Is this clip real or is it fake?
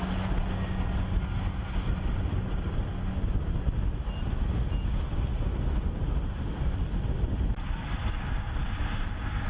real